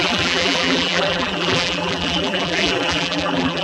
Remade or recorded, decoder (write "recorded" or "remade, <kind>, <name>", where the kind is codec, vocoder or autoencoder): remade, vocoder, BigVGAN v2